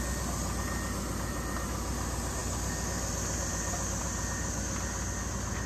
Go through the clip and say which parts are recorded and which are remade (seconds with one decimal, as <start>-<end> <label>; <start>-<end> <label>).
0.0-5.7 recorded